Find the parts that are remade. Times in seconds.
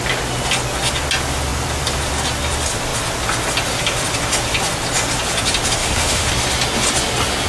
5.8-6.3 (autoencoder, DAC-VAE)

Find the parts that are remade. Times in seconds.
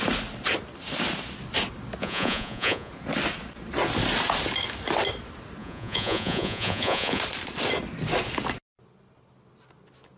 2.0-2.9 (vocoder, Vocos); 5.6-7.2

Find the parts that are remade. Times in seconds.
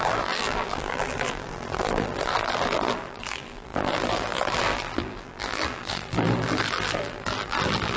0.0-8.0 (vocoder, BigVGAN v2)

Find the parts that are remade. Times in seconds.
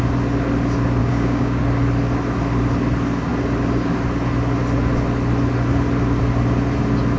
1.0-1.6 (codec, DAC)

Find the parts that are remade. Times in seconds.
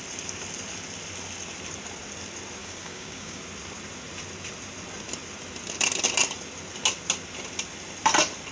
2.6-3.4 (codec, DAC)